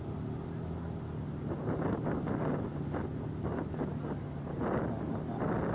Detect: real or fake real